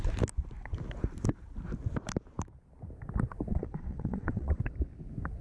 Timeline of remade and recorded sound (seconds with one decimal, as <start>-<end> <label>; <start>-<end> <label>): 0.0-3.5 recorded; 3.5-4.6 remade; 4.6-5.4 recorded